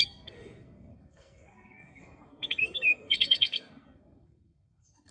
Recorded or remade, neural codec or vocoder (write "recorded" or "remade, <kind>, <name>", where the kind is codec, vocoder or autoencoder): remade, codec, SNAC